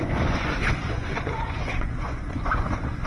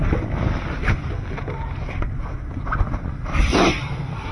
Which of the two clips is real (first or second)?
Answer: second